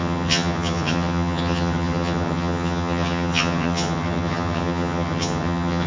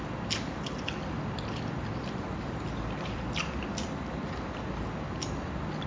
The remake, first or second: first